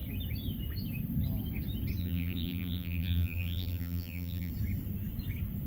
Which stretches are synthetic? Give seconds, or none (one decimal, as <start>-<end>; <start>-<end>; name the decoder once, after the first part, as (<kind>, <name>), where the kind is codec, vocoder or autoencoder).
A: 2.0-4.5 (vocoder, BigVGAN v2)